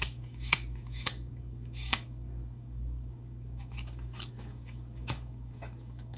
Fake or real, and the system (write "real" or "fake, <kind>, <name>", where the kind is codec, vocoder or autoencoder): fake, codec, DAC